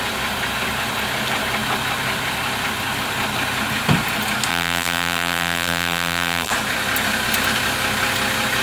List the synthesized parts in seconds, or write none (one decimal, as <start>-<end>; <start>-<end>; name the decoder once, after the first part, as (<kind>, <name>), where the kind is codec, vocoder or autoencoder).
4.5-6.5 (vocoder, BigVGAN v2)